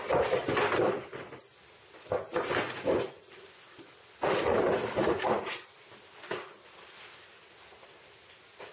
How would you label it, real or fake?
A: real